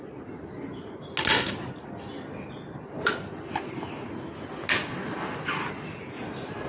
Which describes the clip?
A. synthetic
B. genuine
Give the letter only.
B